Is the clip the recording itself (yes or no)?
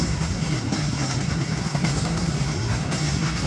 no